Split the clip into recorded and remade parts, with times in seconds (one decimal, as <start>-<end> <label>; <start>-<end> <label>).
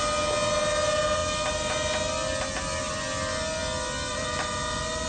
0.0-5.1 recorded